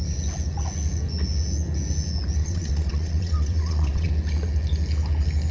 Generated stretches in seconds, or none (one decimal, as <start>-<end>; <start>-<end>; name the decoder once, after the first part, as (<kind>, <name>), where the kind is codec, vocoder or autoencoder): 2.4-4.1 (vocoder, WaveNeXt)